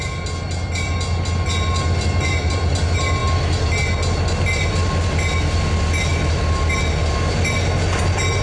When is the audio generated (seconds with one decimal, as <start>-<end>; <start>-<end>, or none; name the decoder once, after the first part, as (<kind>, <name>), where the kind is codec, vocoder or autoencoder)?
none